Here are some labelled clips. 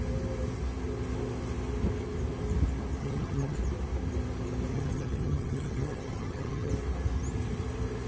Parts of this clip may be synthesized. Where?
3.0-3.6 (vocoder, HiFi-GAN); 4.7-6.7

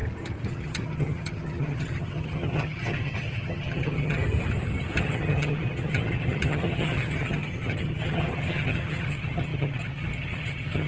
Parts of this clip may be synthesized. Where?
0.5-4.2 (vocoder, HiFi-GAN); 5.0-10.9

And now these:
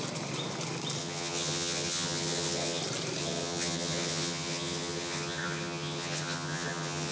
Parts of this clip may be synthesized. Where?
1.0-2.8 (vocoder, HiFi-GAN); 3.2-7.1

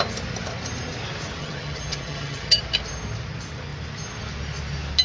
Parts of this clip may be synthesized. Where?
1.4-2.6 (vocoder, HiFi-GAN)